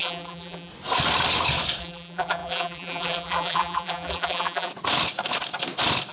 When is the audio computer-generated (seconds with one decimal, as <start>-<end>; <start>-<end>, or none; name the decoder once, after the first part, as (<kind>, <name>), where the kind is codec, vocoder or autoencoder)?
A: 0.0-0.7 (vocoder, BigVGAN v2); 1.8-4.7